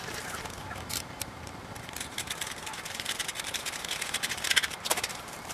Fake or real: fake